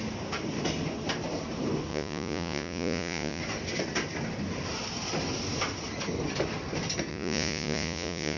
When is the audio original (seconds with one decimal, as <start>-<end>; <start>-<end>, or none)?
0.0-1.9; 3.4-7.1